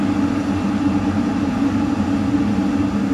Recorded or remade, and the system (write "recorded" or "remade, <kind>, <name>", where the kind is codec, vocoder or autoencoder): recorded